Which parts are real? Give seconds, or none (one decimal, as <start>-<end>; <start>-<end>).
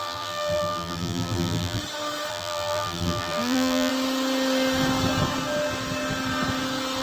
1.8-2.3; 3.9-7.0